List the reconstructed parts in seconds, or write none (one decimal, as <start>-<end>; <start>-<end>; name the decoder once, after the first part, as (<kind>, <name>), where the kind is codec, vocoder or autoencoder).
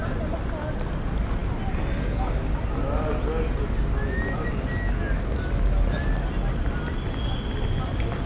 none